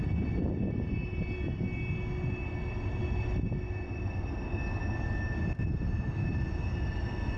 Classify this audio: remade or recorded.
recorded